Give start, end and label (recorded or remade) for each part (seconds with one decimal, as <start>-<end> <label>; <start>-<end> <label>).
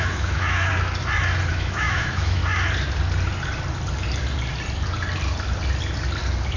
0.0-0.7 remade; 0.7-1.5 recorded; 1.5-2.4 remade; 2.4-6.6 recorded